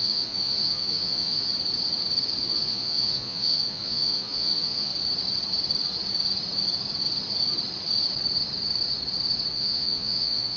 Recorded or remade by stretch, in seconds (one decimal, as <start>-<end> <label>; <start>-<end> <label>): 0.0-1.5 remade; 1.5-2.4 recorded; 2.4-4.9 remade; 4.9-9.5 recorded; 9.5-10.6 remade